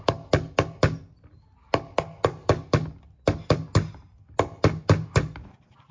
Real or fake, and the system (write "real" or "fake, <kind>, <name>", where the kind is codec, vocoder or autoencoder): real